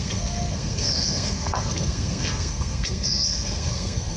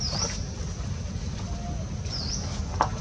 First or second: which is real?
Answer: second